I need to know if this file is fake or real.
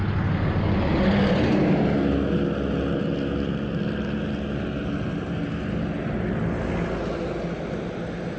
real